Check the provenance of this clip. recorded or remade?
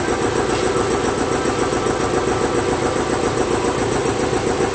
recorded